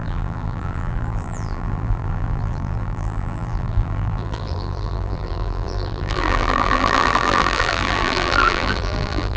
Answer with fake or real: fake